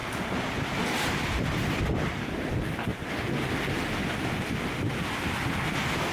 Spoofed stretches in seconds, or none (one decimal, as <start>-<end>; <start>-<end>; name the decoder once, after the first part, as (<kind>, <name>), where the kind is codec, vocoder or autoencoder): 0.0-2.5 (vocoder, BigVGAN v2)